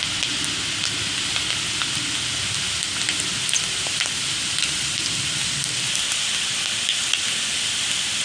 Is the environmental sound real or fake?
real